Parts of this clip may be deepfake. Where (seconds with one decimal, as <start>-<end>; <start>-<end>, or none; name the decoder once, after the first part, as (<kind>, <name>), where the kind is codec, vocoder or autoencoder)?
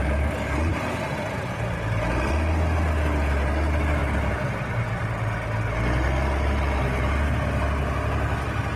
0.7-2.3 (vocoder, BigVGAN v2); 4.0-5.0